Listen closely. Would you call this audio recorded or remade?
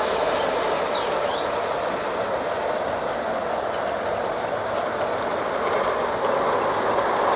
recorded